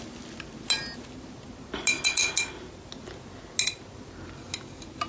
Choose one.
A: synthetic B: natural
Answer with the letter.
B